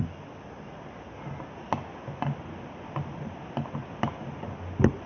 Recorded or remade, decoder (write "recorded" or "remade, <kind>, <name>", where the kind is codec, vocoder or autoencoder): recorded